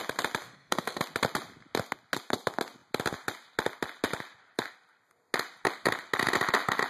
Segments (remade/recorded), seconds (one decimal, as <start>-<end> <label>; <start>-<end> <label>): 0.0-0.4 recorded; 0.4-1.0 remade; 1.0-6.9 recorded